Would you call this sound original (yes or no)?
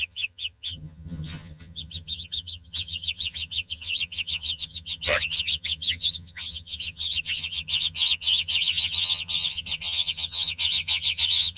no